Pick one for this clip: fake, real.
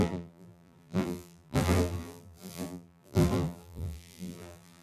fake